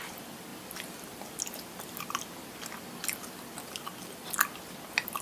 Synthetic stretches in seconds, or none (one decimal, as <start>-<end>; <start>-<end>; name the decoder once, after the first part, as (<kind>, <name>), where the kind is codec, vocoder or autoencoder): none